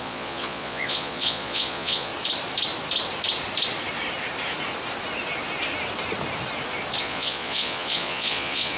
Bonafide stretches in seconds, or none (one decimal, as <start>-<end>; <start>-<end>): 2.1-7.0